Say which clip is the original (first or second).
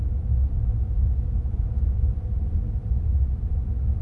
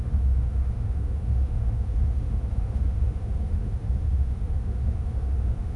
first